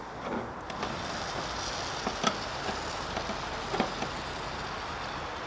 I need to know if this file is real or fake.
real